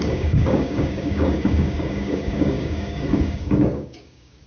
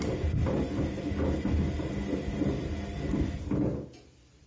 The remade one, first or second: first